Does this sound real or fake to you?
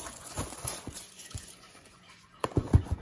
fake